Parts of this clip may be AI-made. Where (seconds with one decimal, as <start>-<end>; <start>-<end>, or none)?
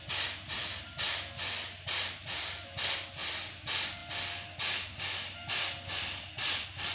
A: none